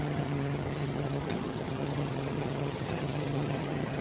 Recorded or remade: remade